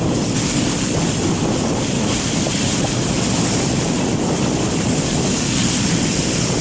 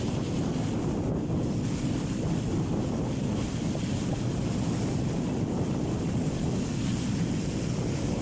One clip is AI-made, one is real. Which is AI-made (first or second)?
first